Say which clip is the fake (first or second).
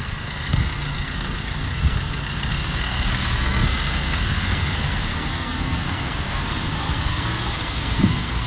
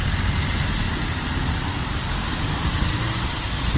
first